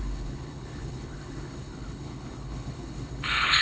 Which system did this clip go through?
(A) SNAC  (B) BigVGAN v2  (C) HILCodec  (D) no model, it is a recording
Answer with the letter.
C